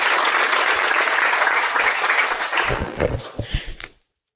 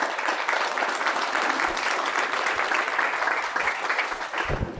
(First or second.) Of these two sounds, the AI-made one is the first